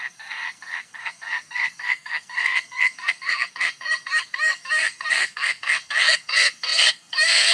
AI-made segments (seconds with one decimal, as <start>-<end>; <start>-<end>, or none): 0.0-7.5